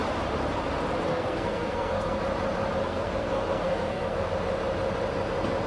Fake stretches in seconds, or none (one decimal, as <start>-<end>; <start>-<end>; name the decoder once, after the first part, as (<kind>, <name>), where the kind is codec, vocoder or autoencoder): 1.1-2.2 (codec, SNAC); 2.8-4.3